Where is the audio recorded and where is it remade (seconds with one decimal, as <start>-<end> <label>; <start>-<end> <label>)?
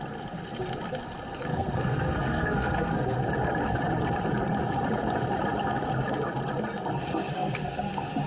0.0-1.5 recorded; 1.5-3.2 remade; 3.2-7.3 recorded; 7.3-7.9 remade; 7.9-8.3 recorded